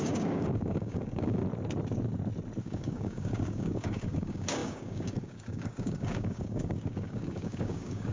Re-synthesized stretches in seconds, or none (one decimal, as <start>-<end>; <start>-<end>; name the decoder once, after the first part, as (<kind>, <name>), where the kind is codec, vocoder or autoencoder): 0.0-1.4 (codec, DAC); 2.6-8.1

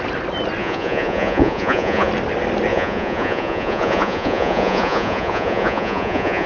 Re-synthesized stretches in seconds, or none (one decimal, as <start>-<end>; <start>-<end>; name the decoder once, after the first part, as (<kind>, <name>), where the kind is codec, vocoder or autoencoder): 0.6-2.1 (vocoder, Vocos); 2.7-6.5